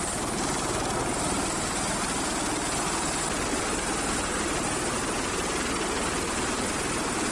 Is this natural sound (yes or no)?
yes